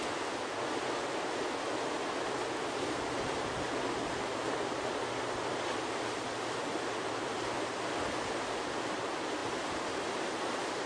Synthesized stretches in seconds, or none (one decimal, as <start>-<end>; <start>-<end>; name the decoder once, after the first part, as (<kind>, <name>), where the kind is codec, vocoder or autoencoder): 9.4-10.5 (vocoder, BigVGAN v2)